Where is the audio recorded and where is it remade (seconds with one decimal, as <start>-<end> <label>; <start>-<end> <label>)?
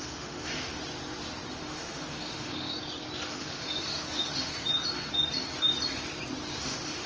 0.0-0.8 remade; 0.8-1.5 recorded; 1.5-2.7 remade; 2.7-3.3 recorded; 3.3-4.5 remade; 4.5-6.6 recorded; 6.6-7.1 remade